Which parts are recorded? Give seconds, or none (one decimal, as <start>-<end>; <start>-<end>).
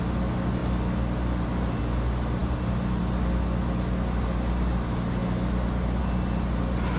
0.0-7.0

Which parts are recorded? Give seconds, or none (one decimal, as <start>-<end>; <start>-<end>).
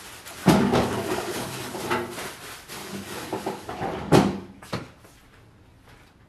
0.0-0.4; 1.8-2.8; 5.0-6.3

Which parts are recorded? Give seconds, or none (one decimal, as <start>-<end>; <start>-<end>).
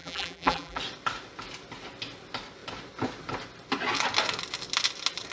0.8-5.3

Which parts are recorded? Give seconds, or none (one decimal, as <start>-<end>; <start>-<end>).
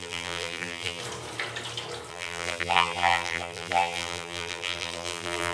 1.0-2.1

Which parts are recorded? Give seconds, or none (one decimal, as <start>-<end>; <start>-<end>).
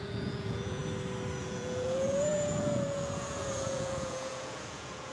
0.8-1.4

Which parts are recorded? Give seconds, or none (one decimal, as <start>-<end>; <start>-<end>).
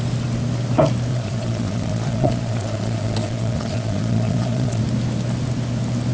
0.0-1.1; 4.8-6.1